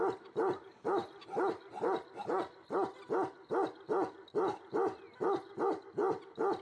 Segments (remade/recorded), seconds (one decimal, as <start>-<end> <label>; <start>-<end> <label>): 0.0-6.6 recorded

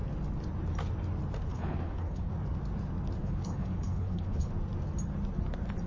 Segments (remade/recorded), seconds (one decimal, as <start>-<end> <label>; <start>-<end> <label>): 0.0-1.5 recorded; 1.5-2.3 remade; 2.3-3.2 recorded; 3.2-4.5 remade; 4.5-5.9 recorded

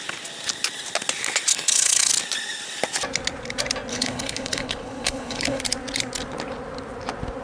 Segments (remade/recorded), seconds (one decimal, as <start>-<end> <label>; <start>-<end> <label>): 0.0-1.5 recorded; 1.5-2.1 remade; 2.1-3.9 recorded; 3.9-5.6 remade; 5.6-7.4 recorded

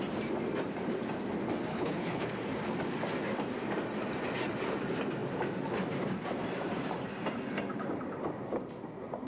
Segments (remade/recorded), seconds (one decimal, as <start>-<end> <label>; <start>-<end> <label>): 0.0-1.7 recorded; 1.7-2.3 remade; 2.3-9.3 recorded